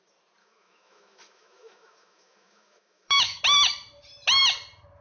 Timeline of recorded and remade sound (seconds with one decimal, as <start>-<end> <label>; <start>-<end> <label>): 0.0-0.4 recorded; 0.4-3.4 remade; 3.4-5.0 recorded